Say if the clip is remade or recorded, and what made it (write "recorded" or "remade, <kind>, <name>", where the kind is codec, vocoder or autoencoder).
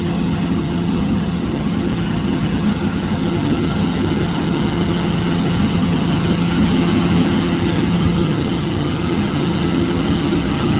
remade, vocoder, HiFi-GAN